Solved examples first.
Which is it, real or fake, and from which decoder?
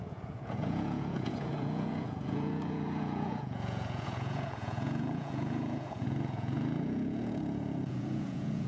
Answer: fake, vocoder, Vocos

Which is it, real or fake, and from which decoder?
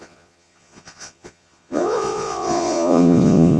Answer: fake, vocoder, Vocos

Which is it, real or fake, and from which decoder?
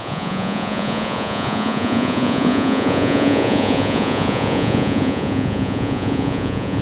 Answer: fake, vocoder, Vocos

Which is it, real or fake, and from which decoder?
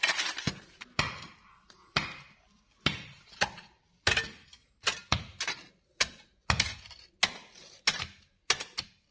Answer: real